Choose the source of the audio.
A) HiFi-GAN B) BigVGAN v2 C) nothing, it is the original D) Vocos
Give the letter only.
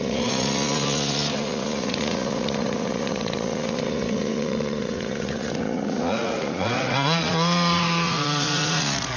D